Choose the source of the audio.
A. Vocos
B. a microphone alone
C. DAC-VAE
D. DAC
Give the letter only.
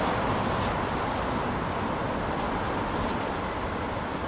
B